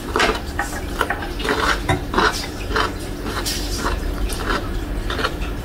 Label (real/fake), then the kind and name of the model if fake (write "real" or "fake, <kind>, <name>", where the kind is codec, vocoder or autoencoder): fake, vocoder, BigVGAN v2